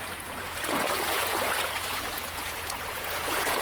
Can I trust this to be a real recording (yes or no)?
no